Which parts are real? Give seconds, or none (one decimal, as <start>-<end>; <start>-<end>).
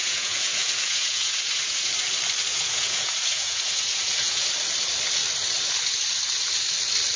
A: 1.9-2.5; 4.5-7.2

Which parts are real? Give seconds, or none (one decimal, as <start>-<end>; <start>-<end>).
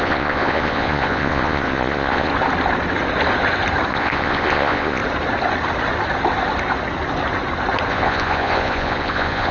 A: 2.3-3.9; 5.0-7.9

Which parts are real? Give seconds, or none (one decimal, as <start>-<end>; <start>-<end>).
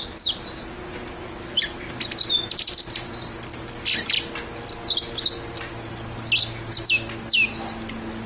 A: 0.0-8.3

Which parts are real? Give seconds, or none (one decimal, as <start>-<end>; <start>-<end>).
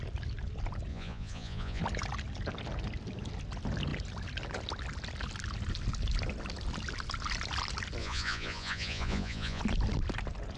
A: 0.0-0.9; 1.8-8.0; 9.6-10.6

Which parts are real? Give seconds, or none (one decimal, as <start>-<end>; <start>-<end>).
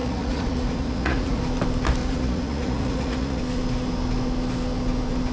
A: 1.4-2.0; 3.4-5.3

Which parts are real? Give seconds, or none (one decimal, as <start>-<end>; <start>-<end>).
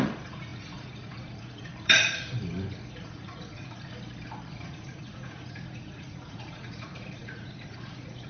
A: 2.3-3.0; 3.9-4.5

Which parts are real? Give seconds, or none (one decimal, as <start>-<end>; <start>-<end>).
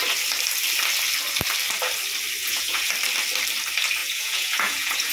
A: 0.0-2.4; 2.9-4.0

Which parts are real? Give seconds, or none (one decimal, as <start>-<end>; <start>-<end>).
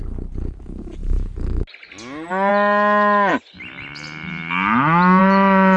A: 0.0-5.8